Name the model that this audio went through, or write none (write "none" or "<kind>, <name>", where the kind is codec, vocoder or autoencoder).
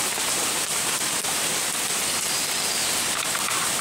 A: none